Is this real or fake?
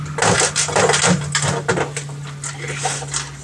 real